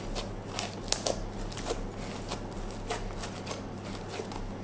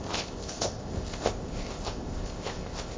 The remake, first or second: second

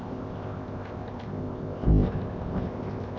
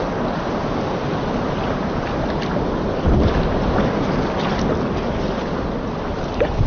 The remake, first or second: first